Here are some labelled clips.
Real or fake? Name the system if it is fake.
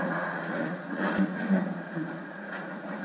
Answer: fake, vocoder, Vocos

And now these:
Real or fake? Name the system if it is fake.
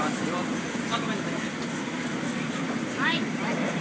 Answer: real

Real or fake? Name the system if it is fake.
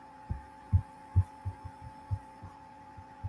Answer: fake, vocoder, Vocos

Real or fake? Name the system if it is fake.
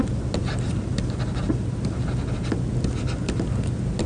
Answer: real